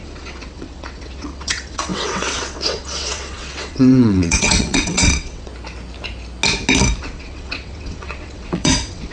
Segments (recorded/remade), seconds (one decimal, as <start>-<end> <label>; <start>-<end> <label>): 0.0-5.5 remade; 5.5-7.0 recorded; 7.0-9.1 remade